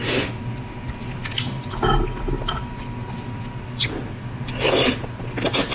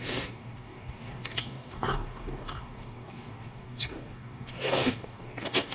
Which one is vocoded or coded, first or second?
second